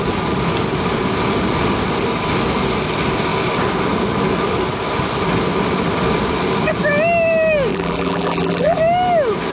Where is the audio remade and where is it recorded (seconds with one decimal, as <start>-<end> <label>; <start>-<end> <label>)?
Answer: 0.0-7.7 recorded; 7.7-8.8 remade; 8.8-9.5 recorded